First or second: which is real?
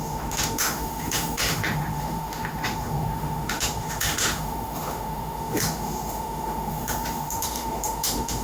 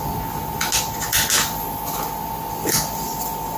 second